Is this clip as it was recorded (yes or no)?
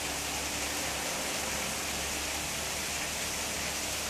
yes